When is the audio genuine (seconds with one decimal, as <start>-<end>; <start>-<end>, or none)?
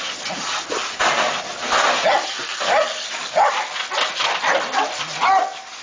0.0-5.8